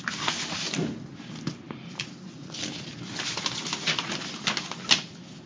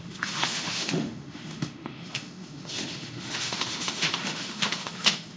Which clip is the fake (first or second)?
second